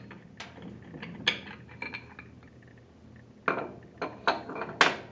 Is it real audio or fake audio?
real